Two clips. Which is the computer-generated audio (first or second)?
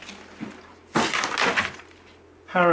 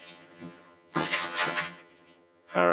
second